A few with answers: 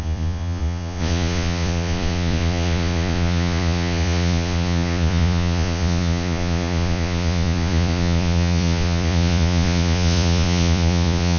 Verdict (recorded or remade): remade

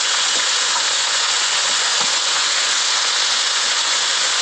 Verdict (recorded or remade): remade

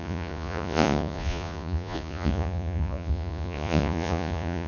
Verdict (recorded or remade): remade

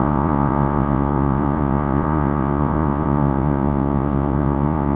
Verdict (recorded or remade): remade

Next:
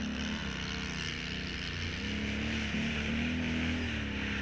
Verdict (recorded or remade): recorded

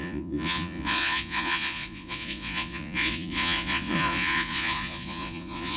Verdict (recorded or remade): remade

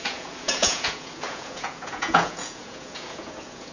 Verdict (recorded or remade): remade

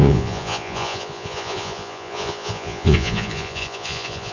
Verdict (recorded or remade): remade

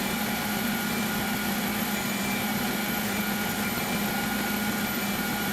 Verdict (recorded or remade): recorded